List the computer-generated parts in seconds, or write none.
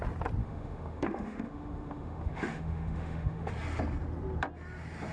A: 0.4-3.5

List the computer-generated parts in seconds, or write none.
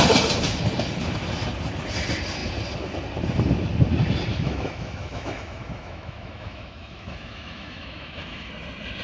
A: 4.3-8.5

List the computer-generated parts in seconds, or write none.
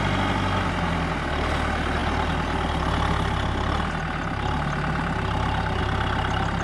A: none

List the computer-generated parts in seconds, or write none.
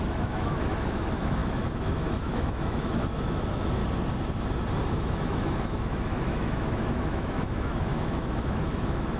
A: 0.0-3.8; 4.9-9.2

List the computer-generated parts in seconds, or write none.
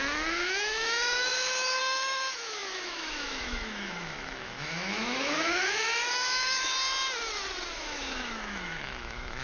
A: 0.0-6.7; 7.7-9.4